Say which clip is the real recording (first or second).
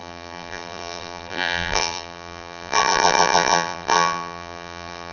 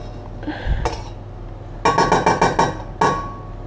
second